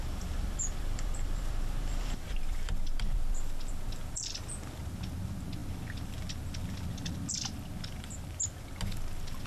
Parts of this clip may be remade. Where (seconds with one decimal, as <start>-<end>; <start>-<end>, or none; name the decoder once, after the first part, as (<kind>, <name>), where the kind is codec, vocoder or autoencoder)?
0.0-5.1 (vocoder, BigVGAN v2)